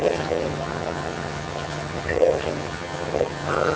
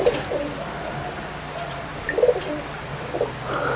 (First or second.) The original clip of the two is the second